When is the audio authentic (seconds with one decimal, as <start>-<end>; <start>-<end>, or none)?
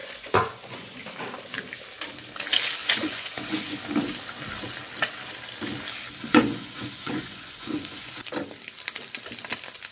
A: 1.0-2.8; 3.8-6.3; 8.1-9.9